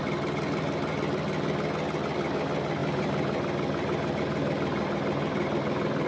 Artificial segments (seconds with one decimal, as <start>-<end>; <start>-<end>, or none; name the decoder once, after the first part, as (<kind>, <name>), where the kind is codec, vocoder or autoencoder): none